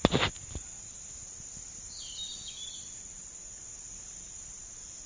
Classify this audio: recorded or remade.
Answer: recorded